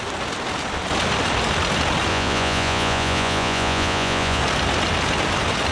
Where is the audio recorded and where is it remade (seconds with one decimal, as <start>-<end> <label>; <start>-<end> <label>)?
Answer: 0.0-2.1 recorded; 2.1-4.4 remade; 4.4-5.7 recorded